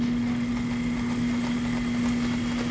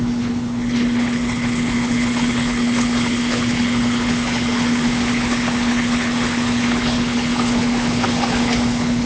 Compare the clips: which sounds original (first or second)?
first